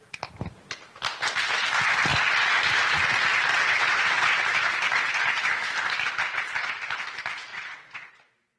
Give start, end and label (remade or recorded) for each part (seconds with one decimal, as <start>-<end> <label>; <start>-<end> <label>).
0.0-3.5 recorded; 3.5-4.4 remade; 4.4-7.5 recorded; 7.5-8.1 remade; 8.1-8.6 recorded